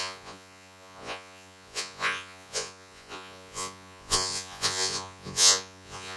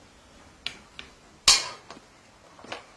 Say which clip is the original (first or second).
second